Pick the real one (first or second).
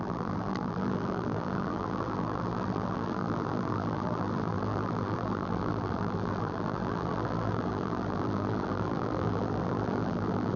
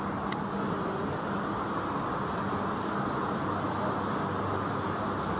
second